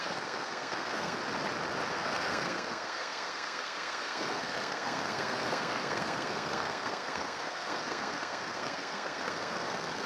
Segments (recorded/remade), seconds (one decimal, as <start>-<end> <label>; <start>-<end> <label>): 0.0-1.2 remade; 1.2-1.9 recorded; 1.9-10.1 remade